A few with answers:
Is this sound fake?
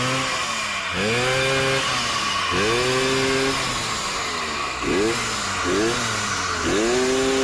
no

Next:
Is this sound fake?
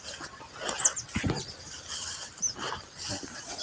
no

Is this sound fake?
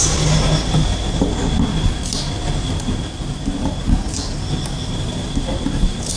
no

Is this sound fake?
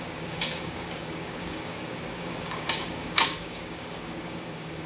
yes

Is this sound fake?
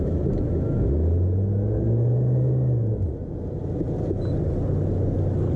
no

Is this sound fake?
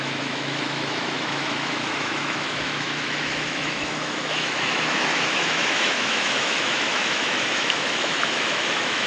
yes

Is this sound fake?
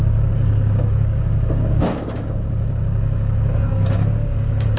yes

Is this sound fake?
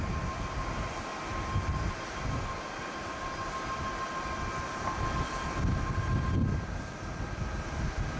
no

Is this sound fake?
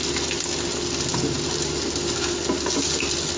no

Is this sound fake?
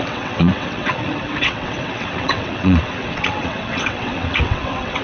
yes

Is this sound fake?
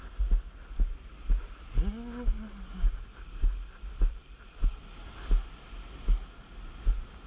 no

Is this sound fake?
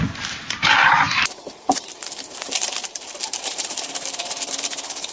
yes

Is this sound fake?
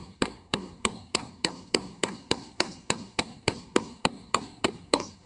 yes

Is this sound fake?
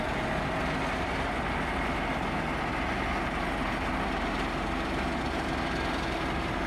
no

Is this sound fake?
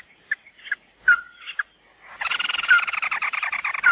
no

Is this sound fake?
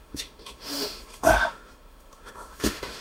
yes